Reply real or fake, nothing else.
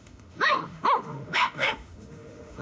fake